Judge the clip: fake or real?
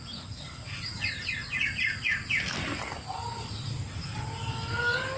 real